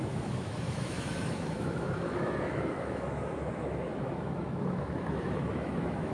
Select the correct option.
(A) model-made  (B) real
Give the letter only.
A